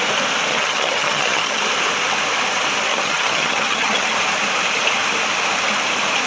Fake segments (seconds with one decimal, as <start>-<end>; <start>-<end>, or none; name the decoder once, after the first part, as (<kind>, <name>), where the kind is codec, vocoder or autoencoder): 0.5-1.6 (vocoder, HiFi-GAN); 2.9-4.1